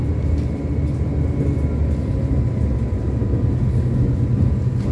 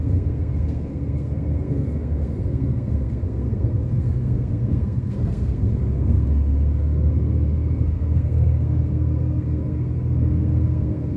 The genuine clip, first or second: first